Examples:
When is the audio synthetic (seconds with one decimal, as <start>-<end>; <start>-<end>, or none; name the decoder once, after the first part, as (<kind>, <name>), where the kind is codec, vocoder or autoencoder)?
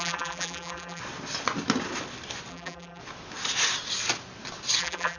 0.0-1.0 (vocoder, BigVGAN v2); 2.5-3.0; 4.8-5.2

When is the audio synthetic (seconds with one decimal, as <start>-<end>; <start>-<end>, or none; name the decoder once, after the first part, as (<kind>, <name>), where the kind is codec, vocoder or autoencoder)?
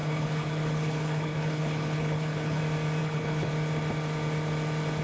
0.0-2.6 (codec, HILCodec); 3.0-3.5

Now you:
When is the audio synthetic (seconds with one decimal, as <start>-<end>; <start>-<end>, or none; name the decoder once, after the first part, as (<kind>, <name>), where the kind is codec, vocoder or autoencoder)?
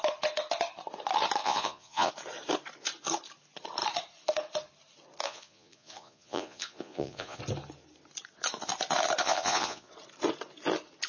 1.4-2.1 (vocoder, Vocos); 5.2-7.4; 9.2-9.9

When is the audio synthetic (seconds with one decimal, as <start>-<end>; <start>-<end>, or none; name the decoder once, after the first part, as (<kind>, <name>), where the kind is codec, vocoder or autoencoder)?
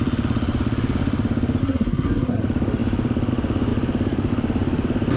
1.6-2.4 (codec, SNAC)